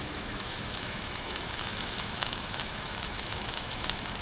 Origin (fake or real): fake